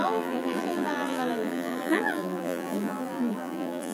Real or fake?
fake